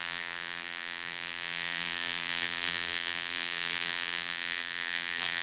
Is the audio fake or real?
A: fake